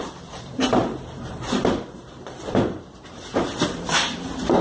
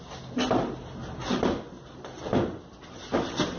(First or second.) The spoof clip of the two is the first